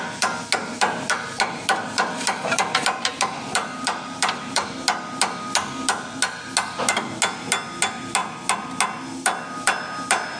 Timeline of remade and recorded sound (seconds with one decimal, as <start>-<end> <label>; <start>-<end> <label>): 0.0-0.6 recorded; 0.6-4.7 remade; 4.7-10.4 recorded